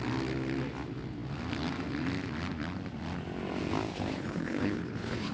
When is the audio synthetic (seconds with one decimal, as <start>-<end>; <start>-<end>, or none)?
3.9-5.3